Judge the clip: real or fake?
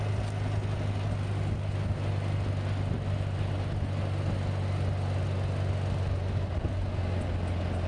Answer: real